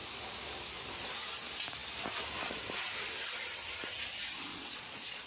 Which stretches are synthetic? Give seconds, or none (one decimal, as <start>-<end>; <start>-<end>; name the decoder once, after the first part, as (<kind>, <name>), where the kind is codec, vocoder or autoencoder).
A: 4.5-5.3 (vocoder, Vocos)

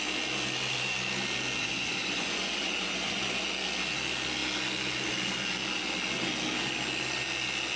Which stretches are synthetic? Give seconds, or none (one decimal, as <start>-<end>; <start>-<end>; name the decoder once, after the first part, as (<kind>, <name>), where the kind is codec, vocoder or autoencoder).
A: 1.6-3.2 (vocoder, Vocos)

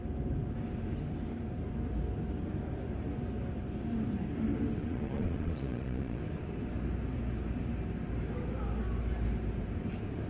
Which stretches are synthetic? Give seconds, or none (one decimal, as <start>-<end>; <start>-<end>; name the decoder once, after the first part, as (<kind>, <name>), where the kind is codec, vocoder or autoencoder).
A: 4.8-6.2 (vocoder, Vocos)

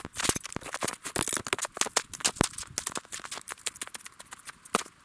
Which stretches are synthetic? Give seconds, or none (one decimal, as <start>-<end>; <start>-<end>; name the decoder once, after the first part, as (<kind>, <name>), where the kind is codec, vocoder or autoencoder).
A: none